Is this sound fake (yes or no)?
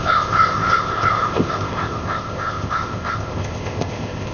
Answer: yes